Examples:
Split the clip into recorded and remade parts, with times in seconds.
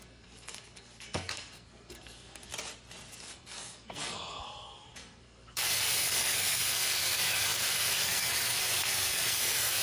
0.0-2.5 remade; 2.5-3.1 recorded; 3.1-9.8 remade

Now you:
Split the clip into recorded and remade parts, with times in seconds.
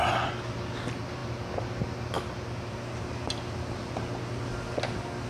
0.0-5.3 recorded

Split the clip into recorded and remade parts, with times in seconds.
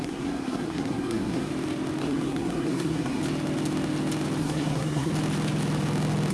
0.0-1.5 remade; 1.5-2.0 recorded; 2.0-3.2 remade; 3.2-4.4 recorded; 4.4-5.1 remade; 5.1-6.3 recorded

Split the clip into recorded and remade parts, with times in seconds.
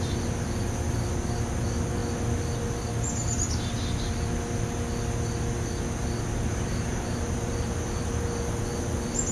0.0-9.3 recorded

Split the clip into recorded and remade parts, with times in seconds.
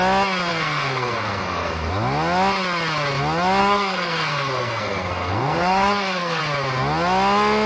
0.0-0.5 recorded; 0.5-1.9 remade; 1.9-3.6 recorded; 3.6-6.4 remade; 6.4-7.7 recorded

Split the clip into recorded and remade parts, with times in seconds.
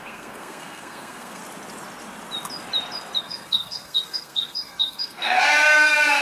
0.0-1.4 remade; 1.4-3.2 recorded; 3.2-6.2 remade